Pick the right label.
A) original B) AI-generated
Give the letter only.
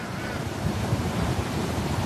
B